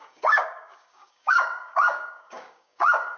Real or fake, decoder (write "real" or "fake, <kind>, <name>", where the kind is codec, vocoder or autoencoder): fake, codec, DAC